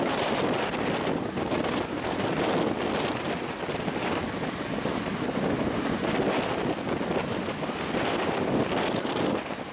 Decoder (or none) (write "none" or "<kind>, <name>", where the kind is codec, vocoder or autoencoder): none